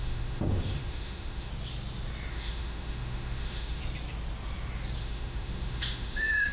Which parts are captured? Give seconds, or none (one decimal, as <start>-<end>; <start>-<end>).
1.5-2.3; 3.8-5.0